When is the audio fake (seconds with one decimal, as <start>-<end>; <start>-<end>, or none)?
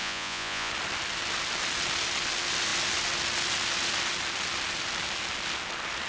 0.0-0.7